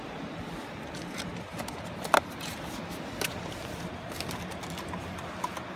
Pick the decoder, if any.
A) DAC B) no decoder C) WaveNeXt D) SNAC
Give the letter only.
B